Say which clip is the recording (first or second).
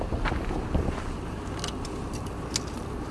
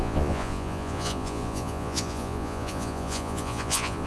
first